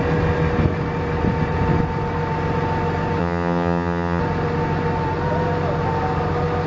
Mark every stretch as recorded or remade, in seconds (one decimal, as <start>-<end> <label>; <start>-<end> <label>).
0.0-3.2 recorded; 3.2-4.2 remade; 4.2-6.7 recorded